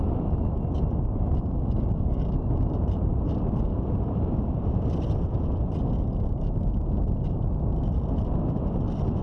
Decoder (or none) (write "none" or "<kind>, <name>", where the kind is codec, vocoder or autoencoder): none